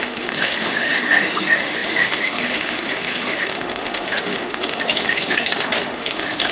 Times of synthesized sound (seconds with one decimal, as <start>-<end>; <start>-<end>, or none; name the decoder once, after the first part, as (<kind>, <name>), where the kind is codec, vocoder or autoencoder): 0.0-6.5 (autoencoder, DAC-VAE)